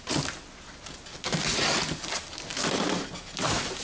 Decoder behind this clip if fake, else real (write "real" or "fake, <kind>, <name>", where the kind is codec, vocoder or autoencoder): real